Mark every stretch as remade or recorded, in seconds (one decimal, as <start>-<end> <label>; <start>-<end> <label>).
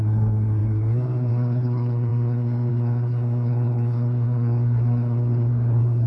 0.0-6.1 remade